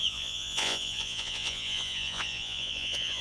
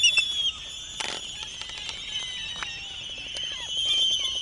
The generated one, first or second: first